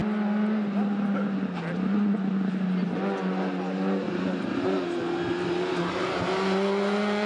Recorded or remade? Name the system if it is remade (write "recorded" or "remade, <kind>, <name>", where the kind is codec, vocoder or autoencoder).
recorded